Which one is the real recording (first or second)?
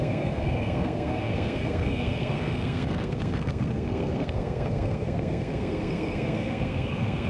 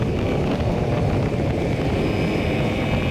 second